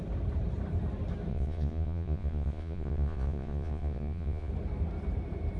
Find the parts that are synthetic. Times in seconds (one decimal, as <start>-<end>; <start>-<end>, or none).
1.3-4.5

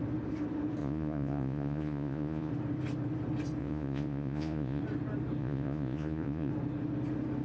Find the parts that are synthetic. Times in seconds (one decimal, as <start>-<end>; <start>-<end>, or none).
0.8-2.5; 3.6-4.8; 5.4-6.5

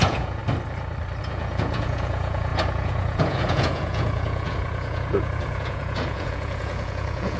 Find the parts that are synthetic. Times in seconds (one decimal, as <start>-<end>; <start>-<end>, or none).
0.0-0.4; 1.2-7.4

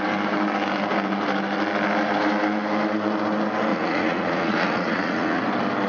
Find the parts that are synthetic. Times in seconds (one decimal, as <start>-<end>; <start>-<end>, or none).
3.7-5.4

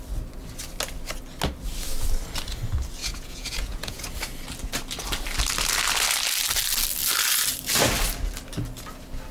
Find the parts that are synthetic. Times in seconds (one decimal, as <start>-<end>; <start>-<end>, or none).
3.0-4.1

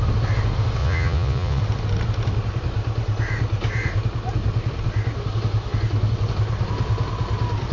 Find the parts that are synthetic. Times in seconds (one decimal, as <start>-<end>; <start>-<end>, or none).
0.8-1.6